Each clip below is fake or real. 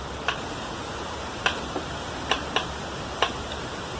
fake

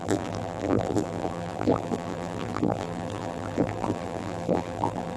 fake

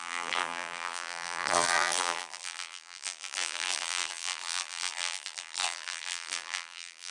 fake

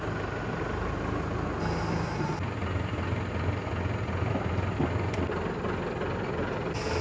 real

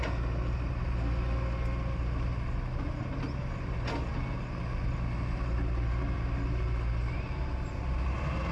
real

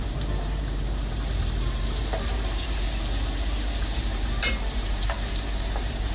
fake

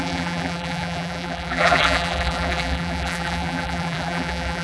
fake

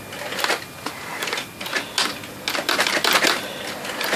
real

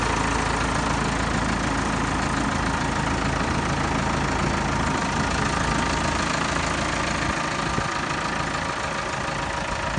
real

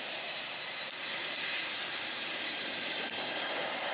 fake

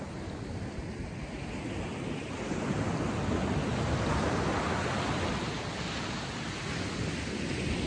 real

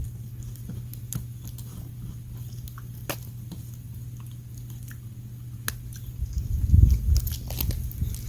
real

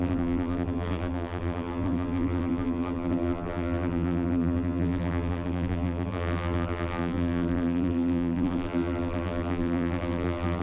fake